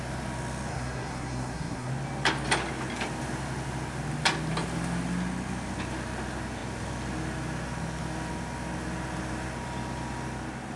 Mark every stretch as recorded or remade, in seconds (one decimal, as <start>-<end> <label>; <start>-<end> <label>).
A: 0.0-0.7 recorded; 0.7-1.9 remade; 1.9-10.8 recorded